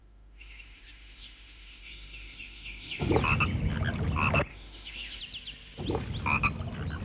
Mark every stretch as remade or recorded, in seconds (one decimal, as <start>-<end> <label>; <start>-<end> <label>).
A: 0.0-3.1 remade; 3.1-4.5 recorded; 4.5-5.2 remade; 5.2-7.0 recorded